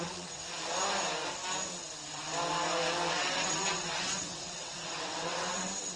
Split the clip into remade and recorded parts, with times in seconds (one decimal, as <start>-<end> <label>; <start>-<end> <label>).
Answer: 0.0-0.4 remade; 0.4-3.1 recorded; 3.1-6.0 remade